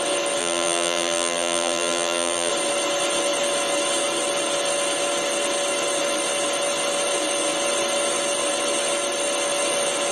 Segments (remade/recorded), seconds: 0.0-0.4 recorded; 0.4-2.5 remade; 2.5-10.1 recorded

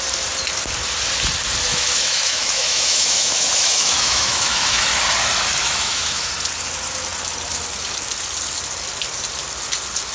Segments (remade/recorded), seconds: 0.0-1.7 recorded; 1.7-5.0 remade; 5.0-5.6 recorded; 5.6-6.3 remade; 6.3-10.1 recorded

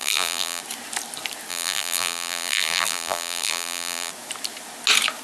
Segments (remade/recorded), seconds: 0.0-0.6 remade; 0.6-1.5 recorded; 1.5-4.1 remade; 4.1-5.2 recorded

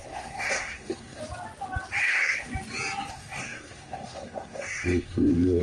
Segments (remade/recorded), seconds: 0.0-1.2 remade; 1.2-2.0 recorded; 2.0-2.5 remade; 2.5-3.1 recorded; 3.1-5.6 remade

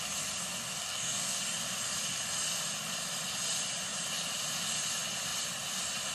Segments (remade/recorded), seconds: 0.0-0.8 recorded; 0.8-1.4 remade; 1.4-6.1 recorded